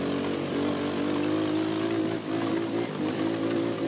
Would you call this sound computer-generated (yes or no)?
no